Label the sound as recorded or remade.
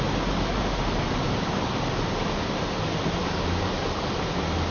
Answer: recorded